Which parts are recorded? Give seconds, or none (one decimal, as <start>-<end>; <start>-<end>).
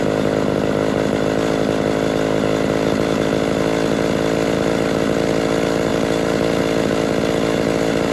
0.0-8.1